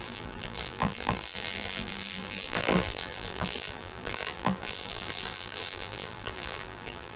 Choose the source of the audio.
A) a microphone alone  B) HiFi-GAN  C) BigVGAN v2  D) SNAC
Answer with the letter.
C